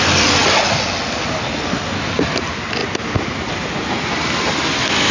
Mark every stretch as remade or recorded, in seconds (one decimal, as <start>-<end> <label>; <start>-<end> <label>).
0.0-5.1 recorded